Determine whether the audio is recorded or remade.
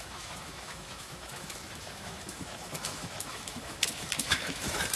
remade